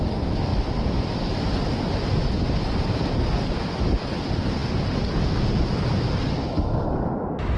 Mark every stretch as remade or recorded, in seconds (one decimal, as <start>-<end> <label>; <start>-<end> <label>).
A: 0.0-7.6 recorded